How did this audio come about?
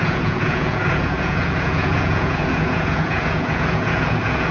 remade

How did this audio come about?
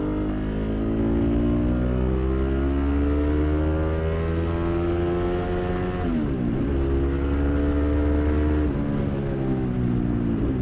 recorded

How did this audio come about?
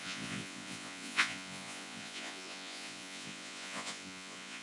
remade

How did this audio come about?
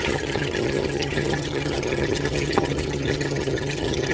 remade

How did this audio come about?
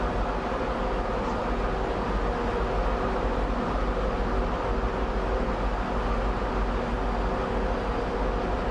recorded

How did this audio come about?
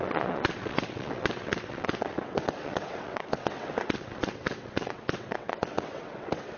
remade